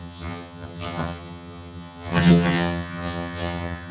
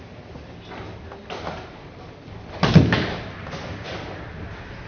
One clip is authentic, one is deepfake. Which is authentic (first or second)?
second